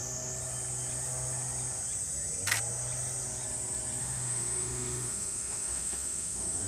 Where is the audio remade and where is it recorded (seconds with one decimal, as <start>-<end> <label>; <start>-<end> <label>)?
0.0-4.0 recorded; 4.0-6.7 remade